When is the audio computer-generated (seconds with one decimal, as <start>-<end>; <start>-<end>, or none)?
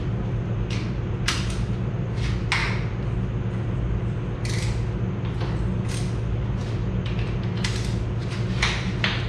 none